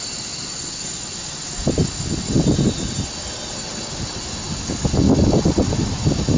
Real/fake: real